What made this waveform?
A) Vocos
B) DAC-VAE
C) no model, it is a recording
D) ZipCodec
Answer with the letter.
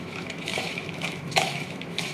B